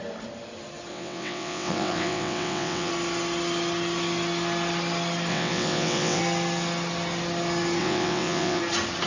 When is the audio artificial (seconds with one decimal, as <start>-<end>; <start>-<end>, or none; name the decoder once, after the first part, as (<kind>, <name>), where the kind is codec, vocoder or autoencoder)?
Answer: 0.9-2.9 (vocoder, WaveNeXt); 5.3-6.2; 7.8-8.6